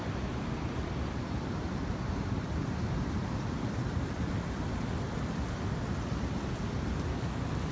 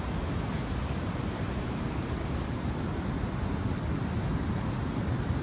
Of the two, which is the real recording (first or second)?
second